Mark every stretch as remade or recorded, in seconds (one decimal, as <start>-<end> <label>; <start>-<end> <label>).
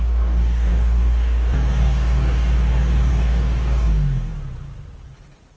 0.0-4.3 remade; 4.3-5.6 recorded